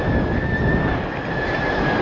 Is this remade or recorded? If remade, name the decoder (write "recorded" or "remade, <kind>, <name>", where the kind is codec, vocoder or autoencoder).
recorded